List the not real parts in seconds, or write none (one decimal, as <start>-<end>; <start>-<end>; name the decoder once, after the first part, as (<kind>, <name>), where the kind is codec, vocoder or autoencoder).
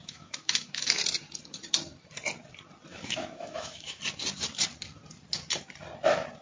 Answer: 0.0-1.0 (autoencoder, DAC-VAE); 2.9-4.0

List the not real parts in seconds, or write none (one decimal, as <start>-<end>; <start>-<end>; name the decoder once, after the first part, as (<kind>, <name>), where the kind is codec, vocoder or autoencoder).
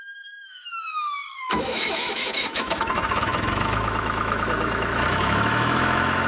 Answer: 0.0-6.3 (autoencoder, DAC-VAE)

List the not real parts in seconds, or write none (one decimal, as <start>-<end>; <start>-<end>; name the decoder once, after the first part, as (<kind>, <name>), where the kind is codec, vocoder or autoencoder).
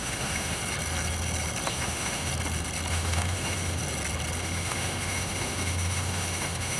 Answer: 0.0-0.6 (autoencoder, DAC-VAE); 1.7-2.3; 2.9-3.8; 4.4-6.8